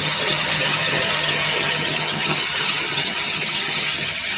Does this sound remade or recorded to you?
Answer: remade